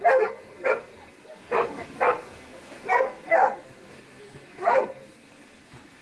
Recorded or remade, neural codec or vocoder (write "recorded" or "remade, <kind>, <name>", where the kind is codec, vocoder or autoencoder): remade, codec, SNAC